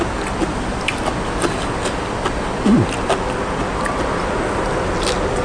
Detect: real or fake real